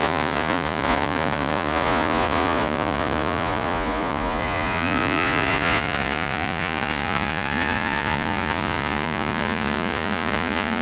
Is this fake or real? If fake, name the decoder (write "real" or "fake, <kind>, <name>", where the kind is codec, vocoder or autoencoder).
fake, vocoder, Vocos